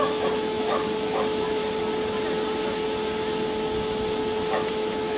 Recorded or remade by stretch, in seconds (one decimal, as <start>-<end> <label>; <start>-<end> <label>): 0.0-1.6 remade; 1.6-4.7 recorded; 4.7-5.2 remade